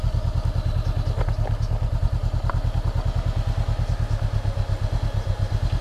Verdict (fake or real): real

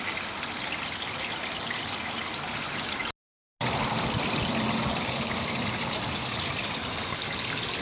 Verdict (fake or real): real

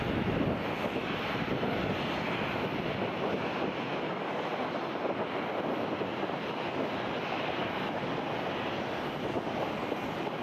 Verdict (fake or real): real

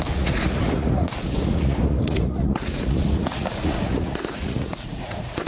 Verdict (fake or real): fake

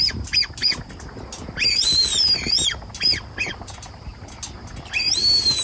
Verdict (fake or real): real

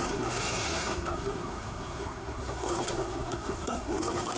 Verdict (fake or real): fake